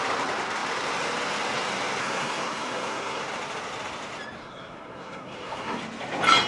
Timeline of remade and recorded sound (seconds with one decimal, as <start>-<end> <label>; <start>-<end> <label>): 0.0-2.0 recorded; 2.0-3.2 remade; 3.2-4.4 recorded; 4.4-5.8 remade; 5.8-6.5 recorded